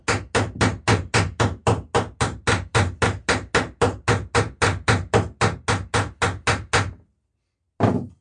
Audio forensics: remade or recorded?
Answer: recorded